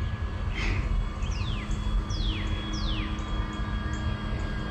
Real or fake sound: real